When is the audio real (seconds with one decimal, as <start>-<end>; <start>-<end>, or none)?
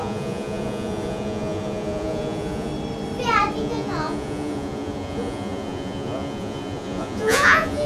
2.7-3.6